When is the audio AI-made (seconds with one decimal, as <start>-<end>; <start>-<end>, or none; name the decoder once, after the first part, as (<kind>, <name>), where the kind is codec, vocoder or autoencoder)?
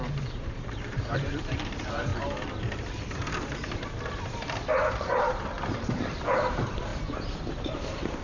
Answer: 0.0-2.1 (vocoder, BigVGAN v2); 4.9-8.2